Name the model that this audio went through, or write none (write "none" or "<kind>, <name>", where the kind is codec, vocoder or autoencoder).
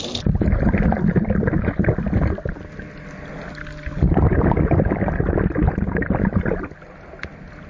none